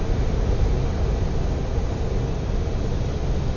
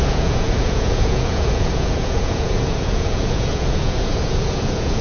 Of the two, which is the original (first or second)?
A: first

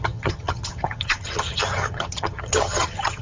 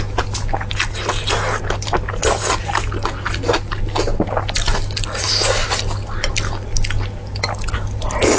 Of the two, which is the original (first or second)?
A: second